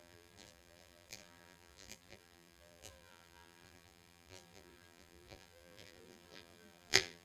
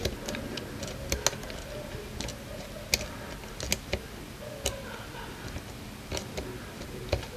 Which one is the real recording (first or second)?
second